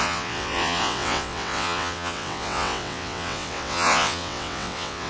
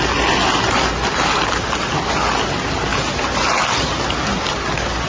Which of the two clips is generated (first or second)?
first